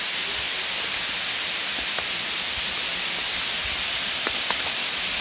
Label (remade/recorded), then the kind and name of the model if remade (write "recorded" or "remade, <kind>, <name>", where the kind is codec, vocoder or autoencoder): recorded